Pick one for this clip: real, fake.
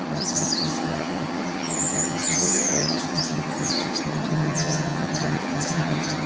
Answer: fake